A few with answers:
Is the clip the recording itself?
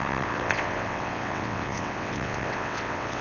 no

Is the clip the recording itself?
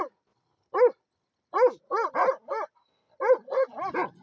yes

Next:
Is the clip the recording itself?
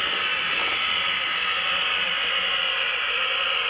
yes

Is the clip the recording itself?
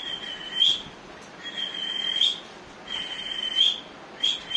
yes